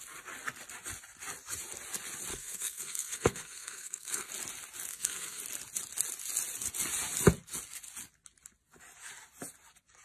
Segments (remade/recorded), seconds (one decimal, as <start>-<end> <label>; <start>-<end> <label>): 0.0-2.3 recorded; 2.3-4.3 remade; 4.3-4.9 recorded; 4.9-5.4 remade; 5.4-10.0 recorded